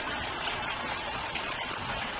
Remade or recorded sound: remade